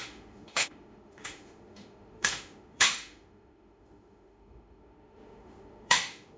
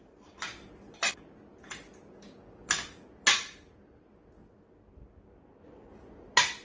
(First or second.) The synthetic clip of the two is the first